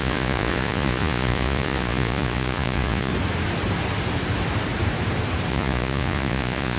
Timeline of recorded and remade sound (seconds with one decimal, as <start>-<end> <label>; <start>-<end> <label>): 0.0-3.1 remade; 3.1-5.5 recorded; 5.5-6.8 remade